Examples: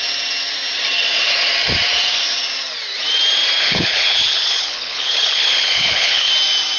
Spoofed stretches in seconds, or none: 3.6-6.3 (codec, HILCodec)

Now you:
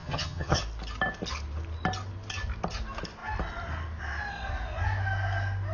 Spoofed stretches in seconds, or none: 0.0-0.6 (vocoder, HiFi-GAN)

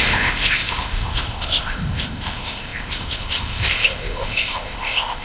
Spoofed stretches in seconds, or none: 0.0-5.2 (codec, ZipCodec)

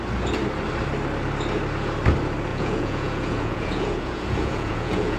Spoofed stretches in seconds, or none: 2.5-5.2 (vocoder, Vocos)

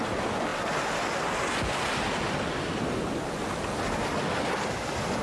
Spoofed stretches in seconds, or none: none

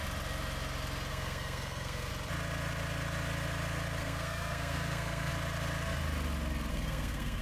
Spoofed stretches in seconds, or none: 1.1-2.1 (codec, SNAC); 4.0-5.3; 6.7-7.4

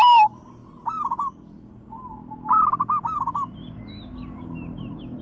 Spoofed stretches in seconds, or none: none